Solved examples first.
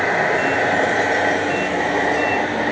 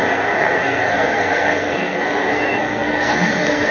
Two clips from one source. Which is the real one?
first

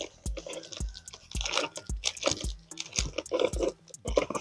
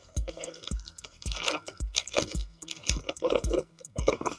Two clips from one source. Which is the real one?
first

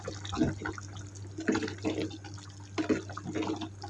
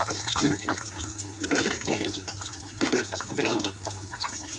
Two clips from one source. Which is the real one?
first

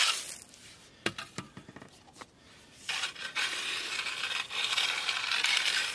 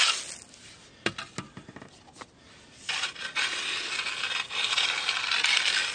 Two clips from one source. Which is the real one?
second